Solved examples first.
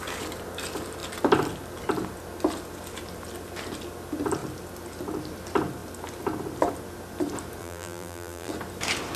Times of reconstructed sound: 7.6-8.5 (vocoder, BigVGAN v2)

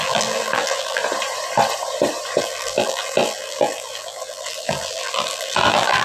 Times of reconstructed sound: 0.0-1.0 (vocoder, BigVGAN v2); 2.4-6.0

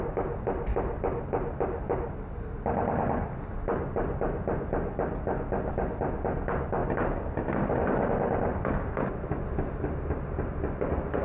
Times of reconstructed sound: none